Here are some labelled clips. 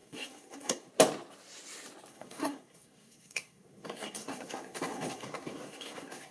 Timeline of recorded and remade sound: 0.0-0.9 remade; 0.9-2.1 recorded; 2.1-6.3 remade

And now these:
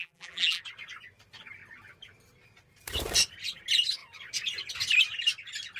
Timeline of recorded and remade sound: 0.0-0.6 remade; 0.6-5.8 recorded